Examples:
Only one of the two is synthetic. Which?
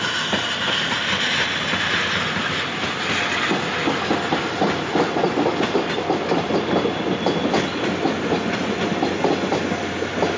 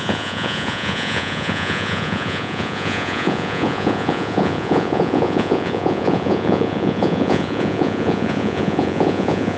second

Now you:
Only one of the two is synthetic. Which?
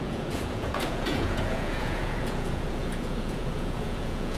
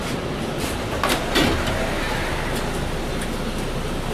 first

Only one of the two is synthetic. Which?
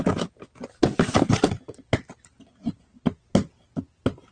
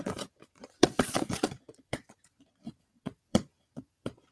second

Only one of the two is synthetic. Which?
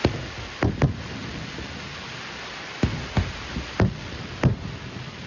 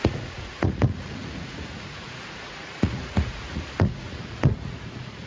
second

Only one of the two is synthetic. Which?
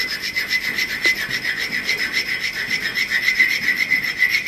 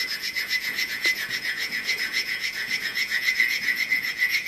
second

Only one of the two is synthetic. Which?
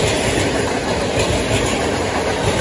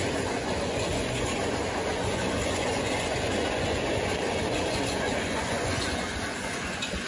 second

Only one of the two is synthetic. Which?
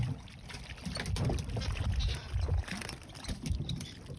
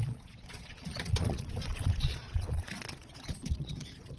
second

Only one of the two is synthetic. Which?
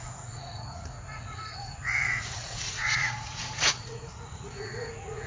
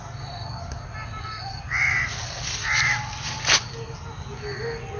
first